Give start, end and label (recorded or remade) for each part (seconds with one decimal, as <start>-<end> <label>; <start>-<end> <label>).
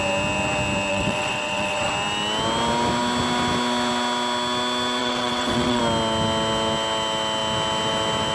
0.0-0.9 recorded; 0.9-1.9 remade; 1.9-5.0 recorded; 5.0-5.8 remade; 5.8-8.3 recorded